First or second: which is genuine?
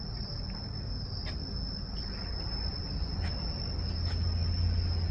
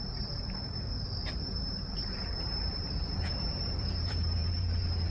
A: first